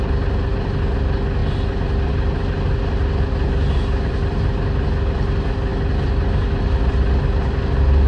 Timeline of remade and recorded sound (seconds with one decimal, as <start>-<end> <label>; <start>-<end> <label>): 0.0-8.1 recorded